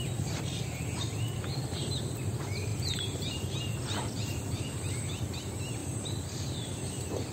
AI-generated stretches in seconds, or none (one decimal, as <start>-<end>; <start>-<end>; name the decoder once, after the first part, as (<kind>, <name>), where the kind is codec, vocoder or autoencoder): 2.7-5.2 (vocoder, BigVGAN v2); 5.8-6.8